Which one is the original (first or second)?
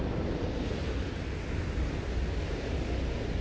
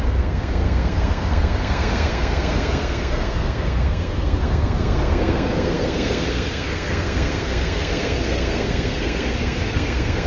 first